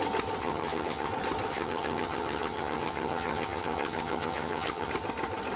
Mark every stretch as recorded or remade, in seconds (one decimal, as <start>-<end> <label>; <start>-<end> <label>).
0.0-0.4 recorded; 0.4-1.1 remade; 1.1-1.5 recorded; 1.5-4.9 remade; 4.9-5.6 recorded